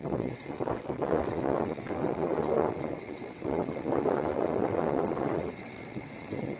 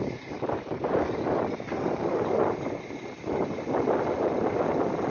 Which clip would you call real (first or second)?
second